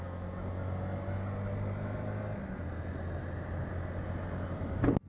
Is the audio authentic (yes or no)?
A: yes